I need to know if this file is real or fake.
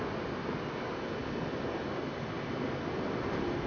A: real